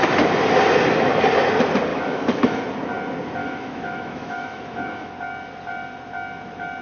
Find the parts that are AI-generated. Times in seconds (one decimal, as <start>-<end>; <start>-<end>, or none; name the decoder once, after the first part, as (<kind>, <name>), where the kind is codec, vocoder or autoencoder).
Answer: 1.9-2.6 (autoencoder, DAC-VAE); 3.4-5.1